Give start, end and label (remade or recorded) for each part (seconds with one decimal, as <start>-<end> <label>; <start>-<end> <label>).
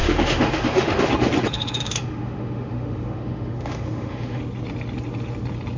0.0-1.1 remade; 1.1-1.5 recorded; 1.5-4.4 remade; 4.4-5.8 recorded